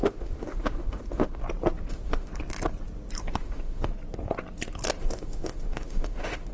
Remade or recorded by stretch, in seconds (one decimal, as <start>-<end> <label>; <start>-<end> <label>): 0.0-1.4 remade; 1.4-1.9 recorded; 1.9-2.3 remade; 2.3-3.2 recorded; 3.2-3.9 remade; 3.9-5.0 recorded; 5.0-6.5 remade